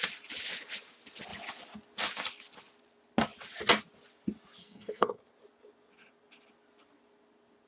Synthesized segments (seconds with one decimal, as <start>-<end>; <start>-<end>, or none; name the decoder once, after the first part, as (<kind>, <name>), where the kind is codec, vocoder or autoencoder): 4.6-5.2 (codec, SNAC)